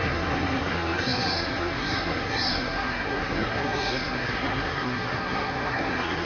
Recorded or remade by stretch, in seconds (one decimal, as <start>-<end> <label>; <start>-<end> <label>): 0.0-6.3 remade